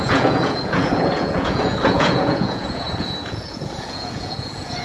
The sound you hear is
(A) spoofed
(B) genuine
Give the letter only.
A